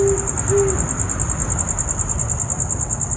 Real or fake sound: real